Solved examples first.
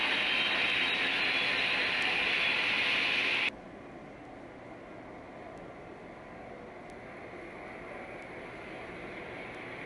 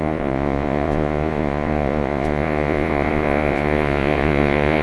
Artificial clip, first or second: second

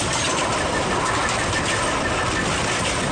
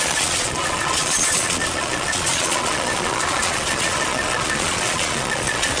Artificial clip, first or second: second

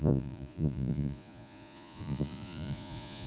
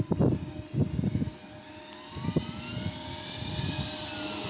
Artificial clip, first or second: first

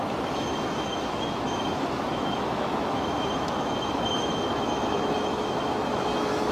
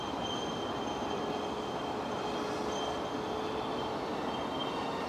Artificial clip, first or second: first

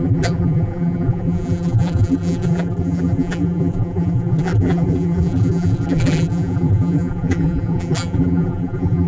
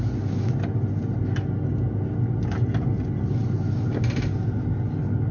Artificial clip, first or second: first